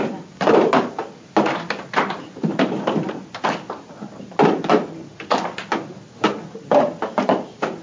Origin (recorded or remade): recorded